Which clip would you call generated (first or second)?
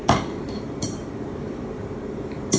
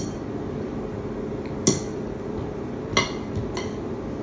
first